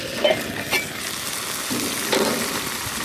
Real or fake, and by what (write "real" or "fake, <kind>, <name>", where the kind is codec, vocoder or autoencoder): real